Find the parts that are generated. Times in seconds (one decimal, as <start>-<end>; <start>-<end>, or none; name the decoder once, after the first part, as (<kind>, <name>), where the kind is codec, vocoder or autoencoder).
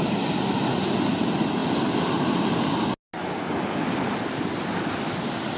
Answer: none